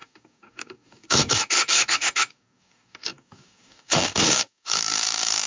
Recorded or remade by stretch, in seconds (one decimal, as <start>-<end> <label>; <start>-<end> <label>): 0.0-5.5 remade